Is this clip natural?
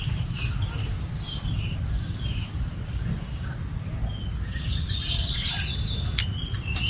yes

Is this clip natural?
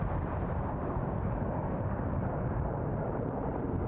no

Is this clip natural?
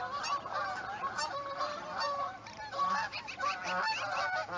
yes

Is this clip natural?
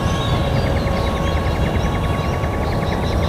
no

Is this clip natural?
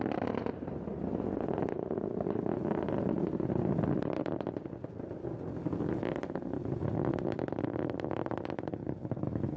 yes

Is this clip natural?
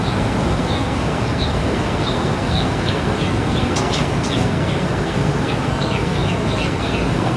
no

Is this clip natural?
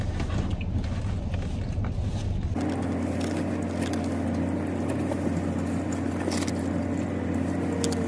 yes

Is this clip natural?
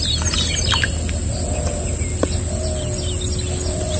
yes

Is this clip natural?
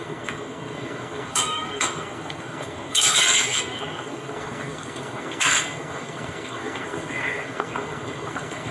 no